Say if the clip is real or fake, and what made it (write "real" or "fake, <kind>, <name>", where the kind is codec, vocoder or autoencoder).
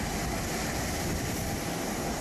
real